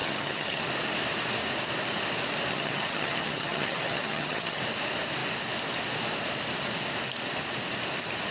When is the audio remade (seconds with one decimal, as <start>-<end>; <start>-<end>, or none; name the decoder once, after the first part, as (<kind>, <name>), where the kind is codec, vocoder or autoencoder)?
0.0-0.6 (vocoder, HiFi-GAN); 2.5-4.6